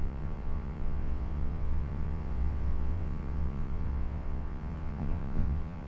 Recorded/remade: remade